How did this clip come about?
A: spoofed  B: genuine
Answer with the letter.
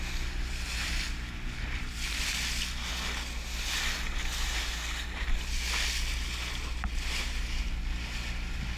B